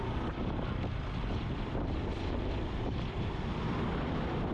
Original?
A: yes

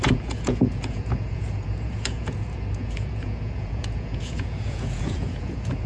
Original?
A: no